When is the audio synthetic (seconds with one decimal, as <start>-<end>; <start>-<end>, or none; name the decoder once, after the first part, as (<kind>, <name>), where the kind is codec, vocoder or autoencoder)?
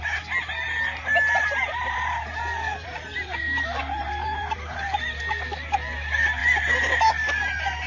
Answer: 1.4-5.2 (vocoder, BigVGAN v2)